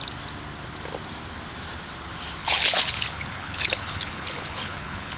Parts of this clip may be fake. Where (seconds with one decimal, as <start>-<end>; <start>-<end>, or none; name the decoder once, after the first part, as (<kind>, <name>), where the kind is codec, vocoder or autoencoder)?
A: 2.4-5.2 (codec, HILCodec)